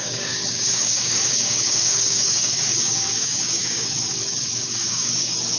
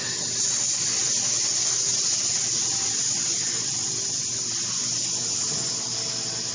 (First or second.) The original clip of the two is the second